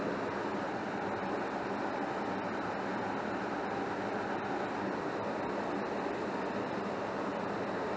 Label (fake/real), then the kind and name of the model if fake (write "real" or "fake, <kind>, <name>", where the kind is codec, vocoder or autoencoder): real